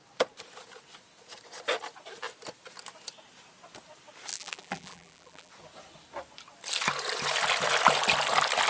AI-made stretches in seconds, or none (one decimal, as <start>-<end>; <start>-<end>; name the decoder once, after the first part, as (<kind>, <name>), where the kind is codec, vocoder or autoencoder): 4.3-5.5 (vocoder, BigVGAN v2)